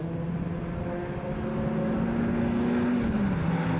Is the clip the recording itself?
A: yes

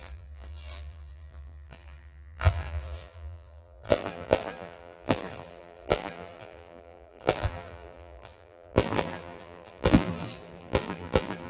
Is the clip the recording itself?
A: no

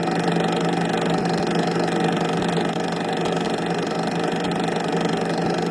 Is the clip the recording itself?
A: yes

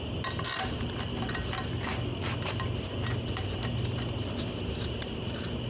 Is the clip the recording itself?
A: yes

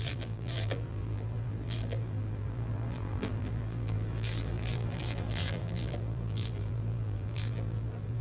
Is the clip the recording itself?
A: no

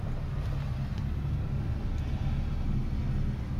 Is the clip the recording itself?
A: yes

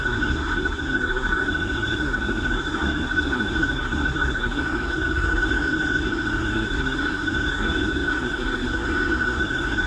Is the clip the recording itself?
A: no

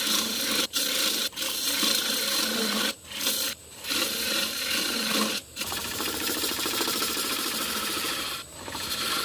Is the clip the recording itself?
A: no